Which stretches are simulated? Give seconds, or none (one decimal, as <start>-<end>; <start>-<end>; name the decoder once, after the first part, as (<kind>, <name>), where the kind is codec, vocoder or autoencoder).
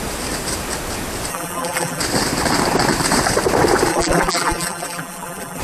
1.3-2.0 (vocoder, BigVGAN v2); 3.9-5.6